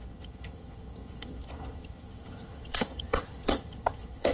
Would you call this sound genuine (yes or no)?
no